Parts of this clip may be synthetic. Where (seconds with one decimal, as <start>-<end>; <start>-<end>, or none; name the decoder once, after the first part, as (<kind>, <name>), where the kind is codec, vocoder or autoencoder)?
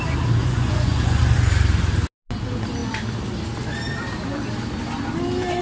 0.4-1.2 (vocoder, Vocos)